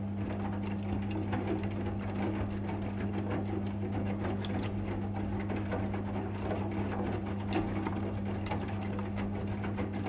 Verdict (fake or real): real